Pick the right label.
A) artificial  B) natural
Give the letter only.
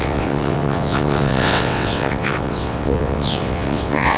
A